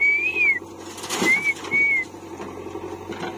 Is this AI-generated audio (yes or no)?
no